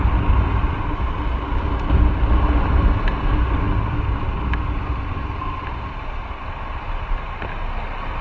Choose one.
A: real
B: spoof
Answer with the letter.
A